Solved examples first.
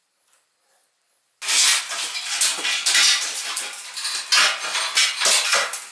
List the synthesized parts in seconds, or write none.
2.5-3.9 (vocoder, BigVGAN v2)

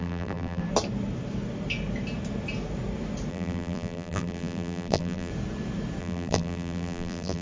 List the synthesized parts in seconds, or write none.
0.0-0.6 (vocoder, BigVGAN v2); 3.3-5.3; 6.0-7.4

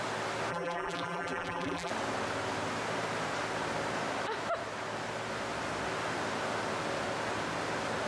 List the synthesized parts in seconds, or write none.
0.5-1.9 (vocoder, BigVGAN v2)